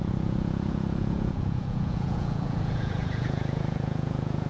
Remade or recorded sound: remade